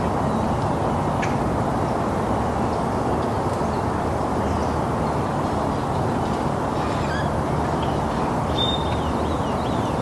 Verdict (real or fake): real